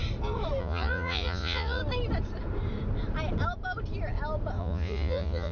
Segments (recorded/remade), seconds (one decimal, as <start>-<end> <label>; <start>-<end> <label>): 0.0-0.6 recorded; 0.6-1.8 remade; 1.8-4.6 recorded; 4.6-5.5 remade

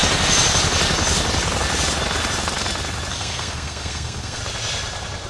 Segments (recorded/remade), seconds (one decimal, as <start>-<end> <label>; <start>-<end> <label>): 0.0-3.1 recorded; 3.1-4.4 remade; 4.4-5.3 recorded

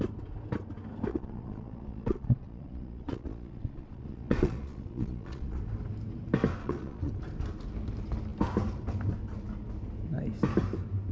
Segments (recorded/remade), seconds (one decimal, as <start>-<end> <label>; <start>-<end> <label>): 0.0-1.1 recorded; 1.1-5.6 remade; 5.6-6.6 recorded; 6.6-7.1 remade; 7.1-11.1 recorded

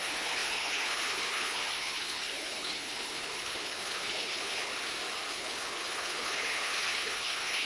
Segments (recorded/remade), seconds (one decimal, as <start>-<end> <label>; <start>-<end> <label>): 0.0-4.7 remade; 4.7-5.3 recorded; 5.3-7.6 remade

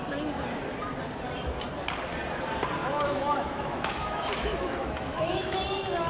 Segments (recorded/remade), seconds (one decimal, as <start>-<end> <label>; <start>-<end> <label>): 0.0-2.8 recorded; 2.8-5.6 remade; 5.6-6.1 recorded

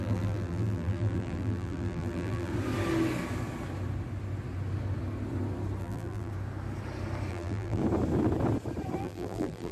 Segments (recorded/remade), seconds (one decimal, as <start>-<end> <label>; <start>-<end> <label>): 0.0-2.5 remade; 2.5-5.8 recorded; 5.8-6.3 remade; 6.3-7.3 recorded; 7.3-7.8 remade; 7.8-9.0 recorded; 9.0-9.7 remade

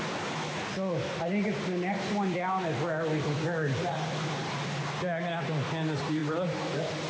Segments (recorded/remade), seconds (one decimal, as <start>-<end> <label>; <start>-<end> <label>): 0.0-7.1 recorded

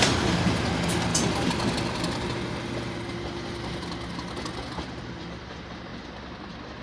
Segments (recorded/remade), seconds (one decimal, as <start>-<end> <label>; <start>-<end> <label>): 0.0-6.8 recorded